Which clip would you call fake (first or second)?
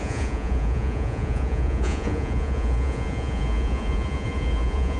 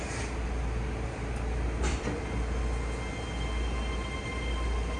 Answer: first